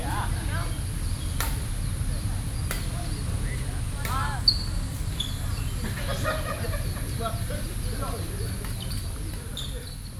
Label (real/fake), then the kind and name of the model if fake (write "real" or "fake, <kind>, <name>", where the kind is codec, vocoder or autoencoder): real